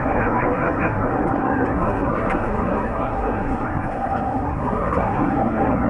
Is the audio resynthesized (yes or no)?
yes